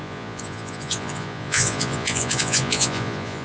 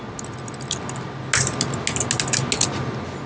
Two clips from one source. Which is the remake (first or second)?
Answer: first